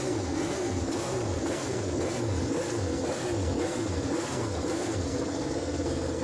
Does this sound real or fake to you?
fake